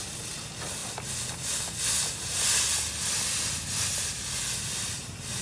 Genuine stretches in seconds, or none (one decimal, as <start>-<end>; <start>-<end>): 0.0-5.4